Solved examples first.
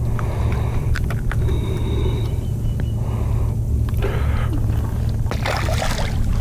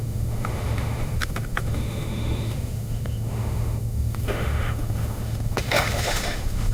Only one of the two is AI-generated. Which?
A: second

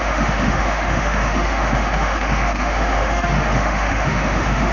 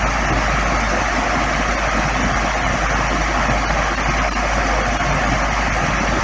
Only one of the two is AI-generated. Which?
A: first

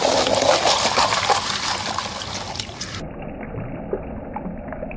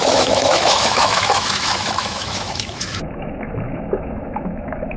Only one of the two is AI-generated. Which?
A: second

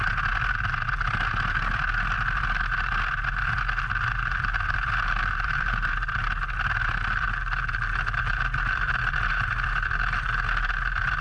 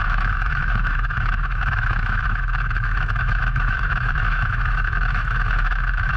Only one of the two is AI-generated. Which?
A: second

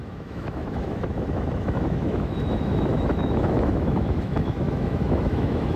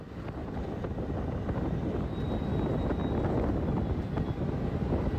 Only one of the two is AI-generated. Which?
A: first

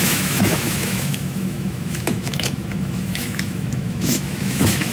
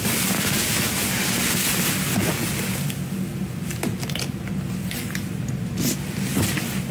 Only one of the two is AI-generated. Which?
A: first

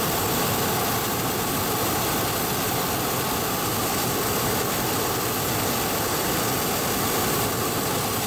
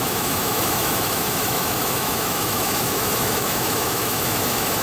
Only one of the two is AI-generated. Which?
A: second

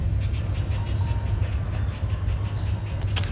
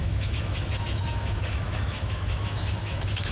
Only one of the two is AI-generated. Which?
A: second